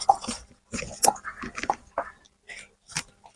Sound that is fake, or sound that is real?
real